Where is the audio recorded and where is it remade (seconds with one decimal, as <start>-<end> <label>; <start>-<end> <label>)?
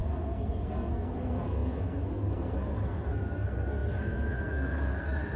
0.0-5.4 remade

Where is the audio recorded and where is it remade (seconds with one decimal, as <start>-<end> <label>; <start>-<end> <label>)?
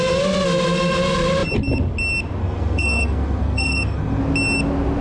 0.0-2.4 recorded; 2.4-4.2 remade; 4.2-5.0 recorded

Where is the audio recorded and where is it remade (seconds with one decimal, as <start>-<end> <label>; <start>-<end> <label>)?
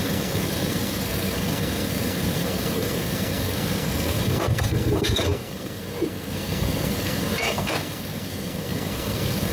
0.0-9.5 remade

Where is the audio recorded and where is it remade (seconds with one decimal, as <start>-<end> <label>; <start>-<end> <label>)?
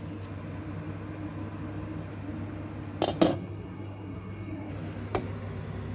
0.0-3.3 recorded; 3.3-4.7 remade; 4.7-5.9 recorded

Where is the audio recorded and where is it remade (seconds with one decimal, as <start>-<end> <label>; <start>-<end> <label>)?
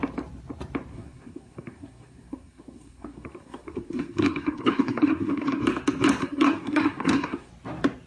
0.0-0.9 recorded; 0.9-5.6 remade; 5.6-6.2 recorded; 6.2-7.5 remade; 7.5-8.1 recorded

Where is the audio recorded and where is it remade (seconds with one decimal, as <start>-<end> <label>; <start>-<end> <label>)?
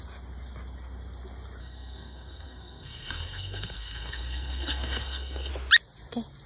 0.0-1.6 recorded; 1.6-5.5 remade; 5.5-6.5 recorded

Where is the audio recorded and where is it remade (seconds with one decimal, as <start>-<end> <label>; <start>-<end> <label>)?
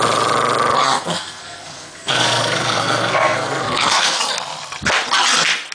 0.0-0.8 recorded; 0.8-4.2 remade; 4.2-5.7 recorded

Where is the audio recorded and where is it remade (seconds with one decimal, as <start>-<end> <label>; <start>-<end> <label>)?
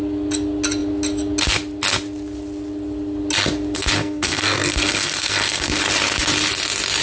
0.0-4.0 recorded; 4.0-5.8 remade; 5.8-7.0 recorded